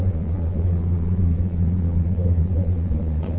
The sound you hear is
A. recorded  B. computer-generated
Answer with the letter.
B